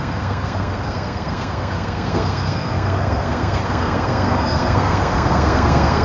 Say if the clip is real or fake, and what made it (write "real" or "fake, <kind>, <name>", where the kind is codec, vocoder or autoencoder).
fake, codec, SNAC